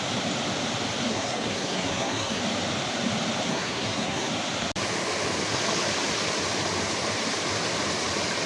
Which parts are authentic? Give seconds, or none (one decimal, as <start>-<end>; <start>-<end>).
0.0-1.1; 2.4-3.5; 4.3-8.5